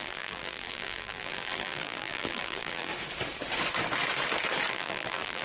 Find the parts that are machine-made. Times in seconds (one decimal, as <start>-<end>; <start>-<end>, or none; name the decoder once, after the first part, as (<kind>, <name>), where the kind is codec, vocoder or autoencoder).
0.0-2.9 (vocoder, BigVGAN v2); 4.7-5.4